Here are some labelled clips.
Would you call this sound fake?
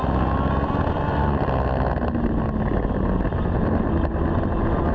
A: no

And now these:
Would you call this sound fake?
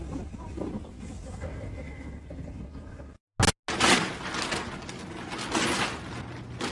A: no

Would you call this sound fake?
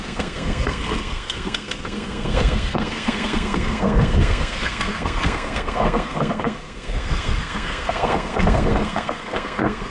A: yes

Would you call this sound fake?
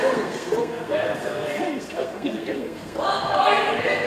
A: yes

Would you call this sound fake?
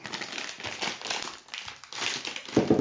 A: no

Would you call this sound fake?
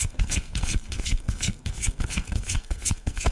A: yes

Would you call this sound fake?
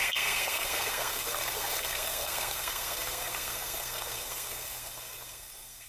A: yes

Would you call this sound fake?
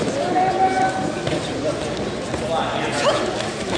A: no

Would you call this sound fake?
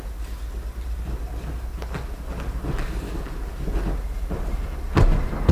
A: no